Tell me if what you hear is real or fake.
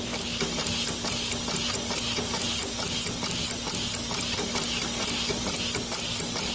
real